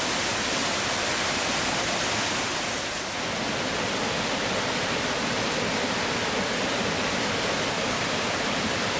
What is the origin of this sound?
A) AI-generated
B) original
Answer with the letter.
B